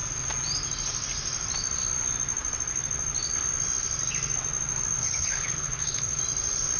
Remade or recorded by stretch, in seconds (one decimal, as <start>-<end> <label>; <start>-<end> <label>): 0.0-5.0 recorded; 5.0-6.2 remade; 6.2-6.8 recorded